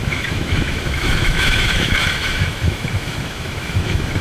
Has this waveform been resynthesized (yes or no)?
yes